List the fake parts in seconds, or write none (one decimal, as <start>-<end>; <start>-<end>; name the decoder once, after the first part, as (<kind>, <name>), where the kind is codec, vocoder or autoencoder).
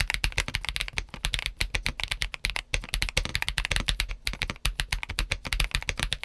none